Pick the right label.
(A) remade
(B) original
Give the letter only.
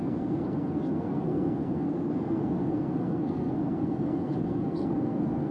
A